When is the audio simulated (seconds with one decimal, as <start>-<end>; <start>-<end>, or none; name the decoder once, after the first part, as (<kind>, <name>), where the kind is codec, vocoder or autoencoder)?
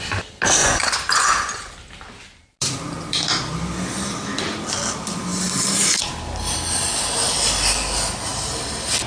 0.6-1.7 (vocoder, Vocos)